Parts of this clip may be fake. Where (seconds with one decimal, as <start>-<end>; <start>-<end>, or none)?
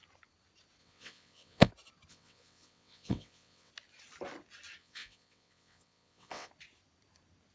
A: 0.8-1.7; 2.1-3.7; 4.8-6.5